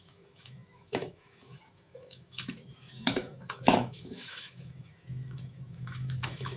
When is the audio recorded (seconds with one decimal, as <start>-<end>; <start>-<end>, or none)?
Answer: none

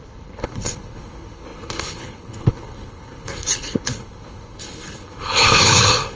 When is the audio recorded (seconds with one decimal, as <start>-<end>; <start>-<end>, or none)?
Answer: none

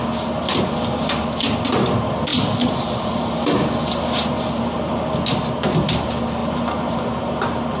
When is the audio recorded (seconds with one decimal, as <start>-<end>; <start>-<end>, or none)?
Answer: 0.0-2.3; 3.3-4.2; 4.8-6.4

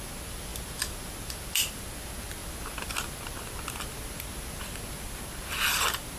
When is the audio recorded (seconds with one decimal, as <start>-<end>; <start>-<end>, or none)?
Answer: 0.0-6.2

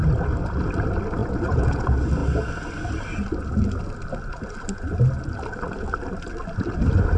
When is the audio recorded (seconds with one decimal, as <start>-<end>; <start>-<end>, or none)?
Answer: 0.0-1.2; 1.8-7.2

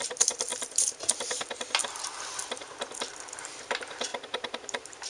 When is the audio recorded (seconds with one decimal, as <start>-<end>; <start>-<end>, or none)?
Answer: 0.0-0.5; 1.0-4.1

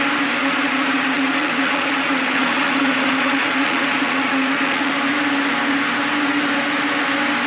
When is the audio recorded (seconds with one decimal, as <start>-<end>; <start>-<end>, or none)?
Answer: 0.0-0.4; 4.9-7.5